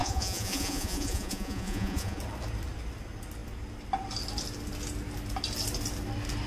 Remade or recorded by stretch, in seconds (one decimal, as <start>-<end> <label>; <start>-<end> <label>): 0.0-2.2 remade; 2.2-6.5 recorded